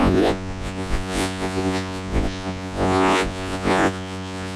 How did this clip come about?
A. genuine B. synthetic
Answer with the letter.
B